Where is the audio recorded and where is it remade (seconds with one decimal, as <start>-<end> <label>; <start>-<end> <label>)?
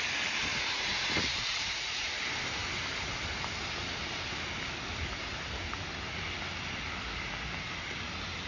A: 0.0-0.5 recorded; 0.5-2.2 remade; 2.2-8.5 recorded